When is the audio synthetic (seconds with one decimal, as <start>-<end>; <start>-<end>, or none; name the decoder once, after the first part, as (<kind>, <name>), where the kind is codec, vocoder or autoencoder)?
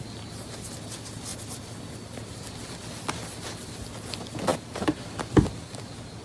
none